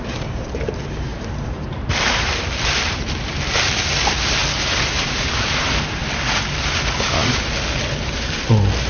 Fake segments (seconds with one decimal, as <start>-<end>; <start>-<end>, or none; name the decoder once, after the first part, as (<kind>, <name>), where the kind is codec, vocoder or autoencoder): 0.0-1.1 (vocoder, BigVGAN v2); 1.7-4.4; 5.1-6.0; 8.0-8.9